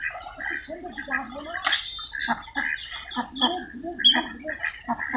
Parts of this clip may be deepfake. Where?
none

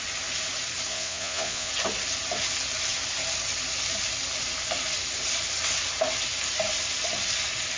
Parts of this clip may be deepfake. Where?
0.9-1.7 (vocoder, Vocos)

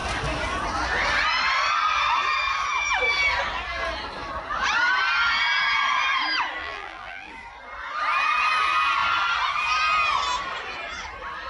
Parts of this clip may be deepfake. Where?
6.6-7.3 (vocoder, BigVGAN v2)

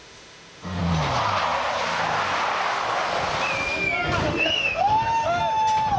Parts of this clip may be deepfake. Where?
0.0-0.8 (autoencoder, DAC-VAE); 4.2-5.4

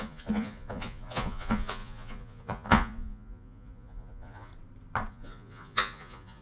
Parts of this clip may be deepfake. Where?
0.0-4.5 (vocoder, Vocos); 5.1-6.4